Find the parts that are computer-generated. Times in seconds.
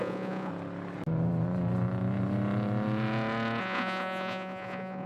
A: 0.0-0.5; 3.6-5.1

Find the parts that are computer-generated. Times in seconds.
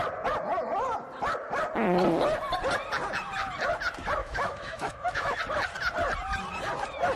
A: 4.2-5.4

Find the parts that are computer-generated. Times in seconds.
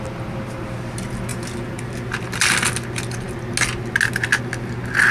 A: none